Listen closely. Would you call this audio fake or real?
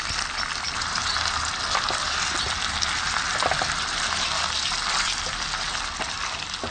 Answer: real